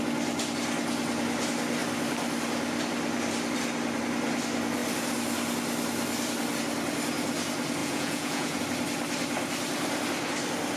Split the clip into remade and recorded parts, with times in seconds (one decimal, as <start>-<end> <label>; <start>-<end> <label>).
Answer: 0.0-7.8 recorded; 7.8-8.6 remade; 8.6-10.8 recorded

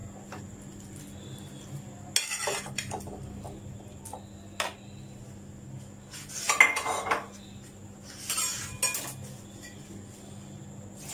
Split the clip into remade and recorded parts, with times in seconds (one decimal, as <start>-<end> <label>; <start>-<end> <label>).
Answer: 0.0-11.1 recorded

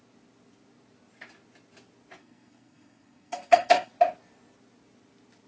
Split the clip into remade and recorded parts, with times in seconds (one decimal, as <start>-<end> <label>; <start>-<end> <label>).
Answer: 0.0-2.2 recorded; 2.2-3.9 remade; 3.9-5.5 recorded

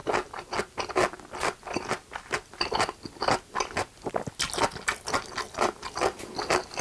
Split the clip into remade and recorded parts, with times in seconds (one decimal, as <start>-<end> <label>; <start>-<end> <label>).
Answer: 0.0-6.8 recorded

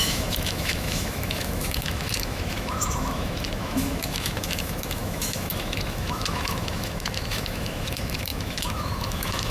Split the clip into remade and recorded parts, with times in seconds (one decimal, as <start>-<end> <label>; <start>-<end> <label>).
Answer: 0.0-9.5 remade

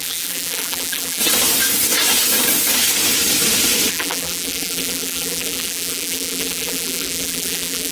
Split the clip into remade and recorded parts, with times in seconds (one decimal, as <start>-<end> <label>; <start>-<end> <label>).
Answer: 0.0-1.2 remade; 1.2-3.9 recorded; 3.9-7.9 remade

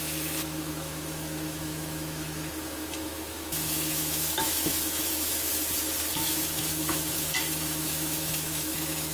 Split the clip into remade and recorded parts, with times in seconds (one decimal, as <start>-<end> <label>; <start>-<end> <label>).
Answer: 0.0-5.5 remade; 5.5-6.1 recorded; 6.1-9.1 remade

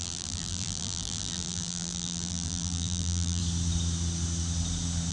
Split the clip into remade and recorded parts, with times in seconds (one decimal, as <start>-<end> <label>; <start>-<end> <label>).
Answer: 0.0-3.4 remade; 3.4-5.1 recorded